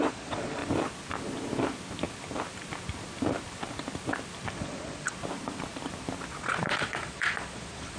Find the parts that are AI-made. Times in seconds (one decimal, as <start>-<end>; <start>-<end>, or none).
0.0-0.6; 4.5-5.2; 6.4-8.0